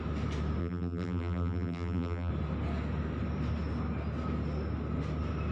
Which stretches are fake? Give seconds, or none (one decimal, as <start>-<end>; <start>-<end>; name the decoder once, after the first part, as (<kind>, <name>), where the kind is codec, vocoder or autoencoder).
0.6-2.3 (vocoder, BigVGAN v2)